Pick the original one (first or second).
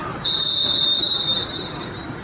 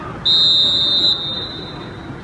second